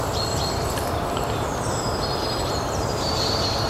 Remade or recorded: remade